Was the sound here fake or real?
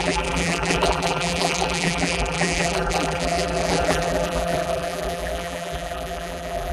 fake